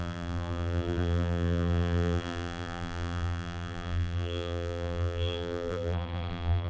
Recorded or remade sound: remade